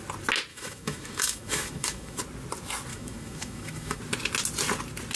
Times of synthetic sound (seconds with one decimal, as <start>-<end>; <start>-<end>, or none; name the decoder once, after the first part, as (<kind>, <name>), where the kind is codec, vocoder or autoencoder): 0.5-2.2 (autoencoder, DAC-VAE); 2.9-4.0